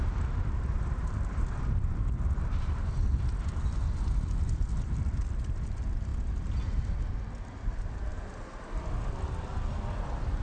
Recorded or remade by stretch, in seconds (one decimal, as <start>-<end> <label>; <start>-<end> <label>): 0.0-10.4 recorded